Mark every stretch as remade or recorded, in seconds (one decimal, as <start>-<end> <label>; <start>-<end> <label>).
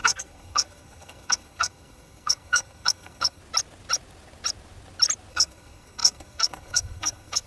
0.0-3.4 remade; 3.4-5.3 recorded; 5.3-7.5 remade